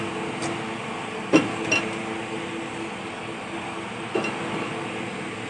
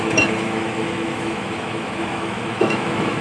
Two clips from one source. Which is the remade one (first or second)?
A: second